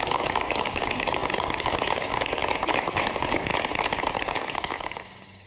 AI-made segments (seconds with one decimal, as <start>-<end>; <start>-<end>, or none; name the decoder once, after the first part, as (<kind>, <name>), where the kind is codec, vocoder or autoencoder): 0.0-3.5 (codec, DAC); 4.1-5.5